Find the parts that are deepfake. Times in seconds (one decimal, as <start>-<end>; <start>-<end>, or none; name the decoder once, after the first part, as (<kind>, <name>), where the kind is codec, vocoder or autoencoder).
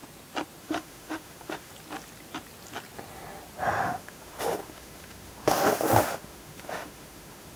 0.6-1.7 (autoencoder, DAC-VAE); 3.8-7.6